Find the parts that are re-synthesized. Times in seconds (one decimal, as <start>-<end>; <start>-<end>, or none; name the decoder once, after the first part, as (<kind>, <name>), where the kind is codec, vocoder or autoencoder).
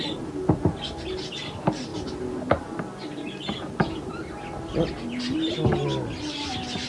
1.9-2.8 (vocoder, BigVGAN v2)